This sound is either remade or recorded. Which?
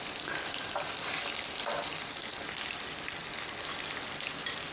recorded